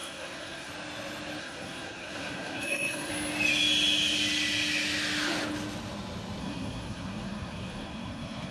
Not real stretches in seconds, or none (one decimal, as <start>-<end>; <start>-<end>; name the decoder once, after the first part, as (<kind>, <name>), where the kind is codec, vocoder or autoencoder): 0.0-0.7 (codec, SNAC); 1.4-3.1; 6.4-8.5